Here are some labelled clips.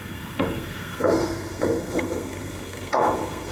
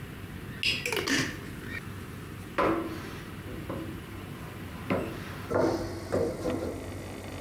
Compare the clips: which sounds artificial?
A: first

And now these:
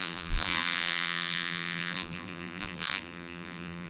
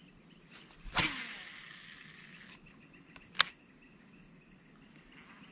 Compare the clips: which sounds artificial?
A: first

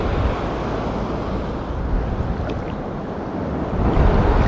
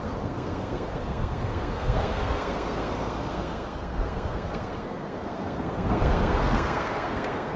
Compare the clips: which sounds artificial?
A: second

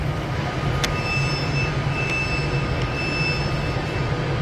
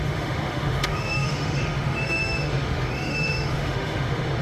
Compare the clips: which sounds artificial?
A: second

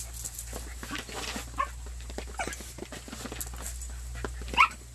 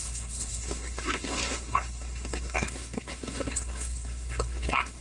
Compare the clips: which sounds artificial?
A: second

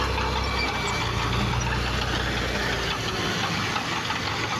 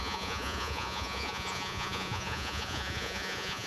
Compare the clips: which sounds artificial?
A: second